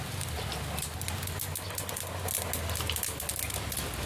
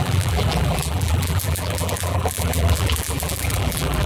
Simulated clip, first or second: second